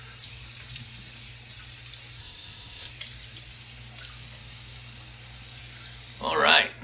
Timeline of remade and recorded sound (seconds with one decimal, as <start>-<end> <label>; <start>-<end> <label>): 0.0-2.2 recorded; 2.2-2.9 remade; 2.9-6.8 recorded